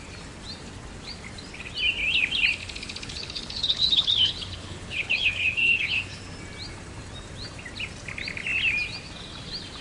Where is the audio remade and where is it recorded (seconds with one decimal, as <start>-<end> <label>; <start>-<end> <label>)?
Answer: 0.0-2.6 recorded; 2.6-6.2 remade; 6.2-9.8 recorded